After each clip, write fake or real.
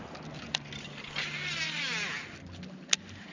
real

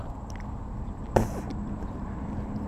fake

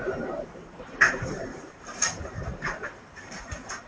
fake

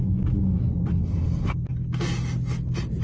real